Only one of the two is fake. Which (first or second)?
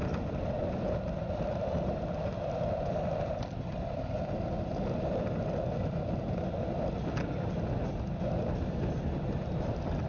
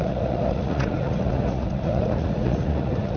second